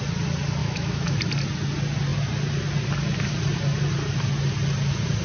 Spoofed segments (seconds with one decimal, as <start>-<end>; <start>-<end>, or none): 0.6-1.2